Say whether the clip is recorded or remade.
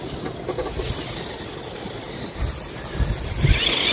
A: recorded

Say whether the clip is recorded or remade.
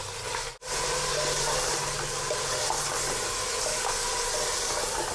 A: recorded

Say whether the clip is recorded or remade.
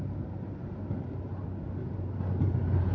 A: recorded